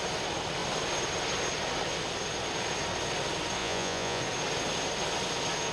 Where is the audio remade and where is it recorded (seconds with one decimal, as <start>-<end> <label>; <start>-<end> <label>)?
0.0-3.6 recorded; 3.6-4.2 remade; 4.2-5.7 recorded